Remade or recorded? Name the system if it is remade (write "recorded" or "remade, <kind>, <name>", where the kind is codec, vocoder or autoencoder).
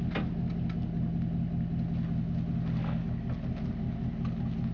recorded